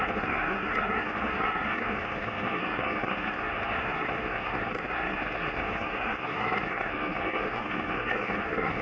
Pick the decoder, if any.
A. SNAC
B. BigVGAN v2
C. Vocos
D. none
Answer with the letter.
A